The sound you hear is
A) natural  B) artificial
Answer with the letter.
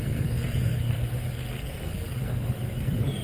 B